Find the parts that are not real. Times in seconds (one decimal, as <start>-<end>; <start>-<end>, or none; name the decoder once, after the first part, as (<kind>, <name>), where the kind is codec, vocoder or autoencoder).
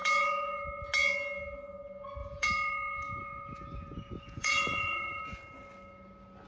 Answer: 0.0-0.6 (vocoder, Vocos); 2.2-5.2